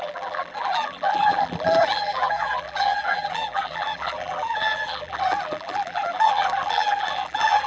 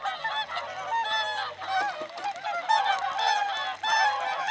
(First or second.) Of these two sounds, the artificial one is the first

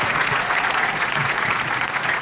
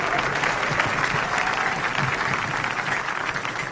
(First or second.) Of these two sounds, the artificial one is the first